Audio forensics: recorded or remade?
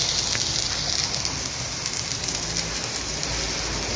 recorded